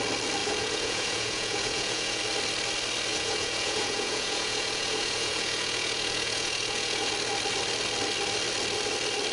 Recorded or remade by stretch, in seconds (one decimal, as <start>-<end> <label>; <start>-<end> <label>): 0.0-0.4 recorded; 0.4-2.2 remade; 2.2-3.1 recorded; 3.1-7.1 remade; 7.1-9.3 recorded